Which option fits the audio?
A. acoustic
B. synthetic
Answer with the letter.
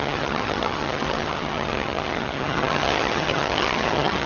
B